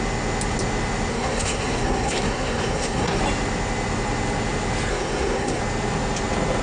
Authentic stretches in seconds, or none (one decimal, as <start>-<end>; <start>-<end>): 0.0-1.1; 3.2-4.9; 5.6-6.6